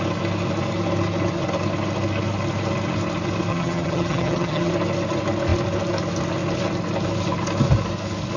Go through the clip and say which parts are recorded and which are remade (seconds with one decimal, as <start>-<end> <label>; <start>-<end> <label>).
0.0-3.5 recorded; 3.5-4.7 remade; 4.7-8.4 recorded